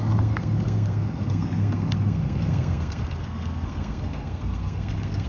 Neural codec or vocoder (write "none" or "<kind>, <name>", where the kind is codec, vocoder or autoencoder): codec, SNAC